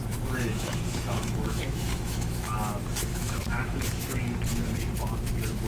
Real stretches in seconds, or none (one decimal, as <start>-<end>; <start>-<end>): 0.0-0.5; 2.5-3.1; 4.2-5.7